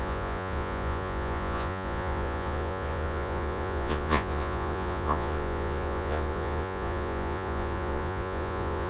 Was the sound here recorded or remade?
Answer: remade